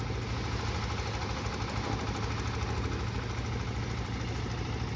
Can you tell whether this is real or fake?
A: real